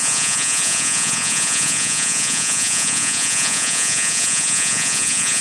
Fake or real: fake